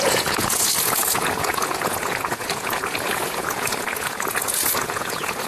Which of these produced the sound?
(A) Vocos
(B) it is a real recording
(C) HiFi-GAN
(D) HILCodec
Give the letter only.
A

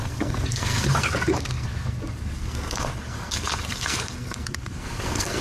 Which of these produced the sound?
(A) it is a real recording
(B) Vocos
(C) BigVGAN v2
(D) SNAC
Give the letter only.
D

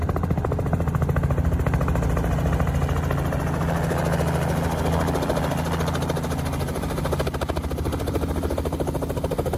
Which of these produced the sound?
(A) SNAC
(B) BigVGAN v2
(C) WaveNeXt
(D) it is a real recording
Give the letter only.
D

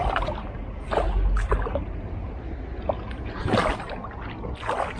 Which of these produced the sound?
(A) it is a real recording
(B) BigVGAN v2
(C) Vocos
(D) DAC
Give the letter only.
A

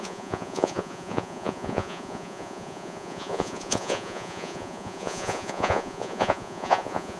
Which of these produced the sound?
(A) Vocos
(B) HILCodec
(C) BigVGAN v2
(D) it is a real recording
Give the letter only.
A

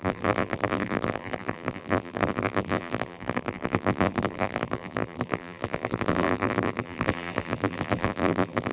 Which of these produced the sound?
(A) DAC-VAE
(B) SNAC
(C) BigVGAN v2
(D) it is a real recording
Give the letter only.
C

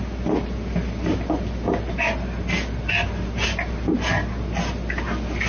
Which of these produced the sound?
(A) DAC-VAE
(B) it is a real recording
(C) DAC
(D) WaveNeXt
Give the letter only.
B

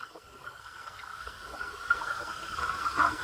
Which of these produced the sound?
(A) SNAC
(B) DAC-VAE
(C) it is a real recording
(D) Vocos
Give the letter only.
A